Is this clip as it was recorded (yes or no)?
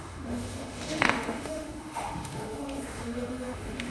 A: no